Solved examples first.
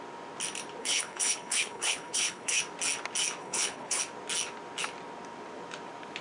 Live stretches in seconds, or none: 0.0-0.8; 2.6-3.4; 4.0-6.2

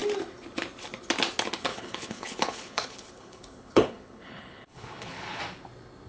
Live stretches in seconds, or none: 0.0-1.7; 5.4-6.1

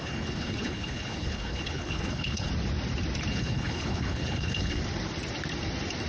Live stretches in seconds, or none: 2.5-3.3; 4.8-6.1

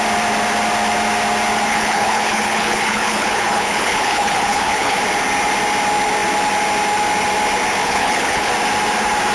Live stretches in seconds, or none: 0.0-1.7; 5.0-7.8; 8.5-9.3